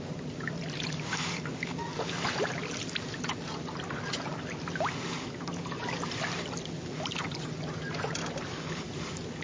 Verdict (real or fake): real